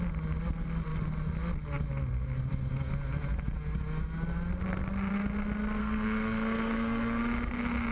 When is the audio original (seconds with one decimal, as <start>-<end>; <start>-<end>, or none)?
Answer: 0.0-5.8; 7.2-7.9